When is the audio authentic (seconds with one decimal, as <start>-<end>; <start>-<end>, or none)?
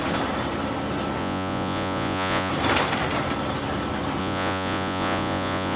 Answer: 0.0-1.2; 2.5-4.2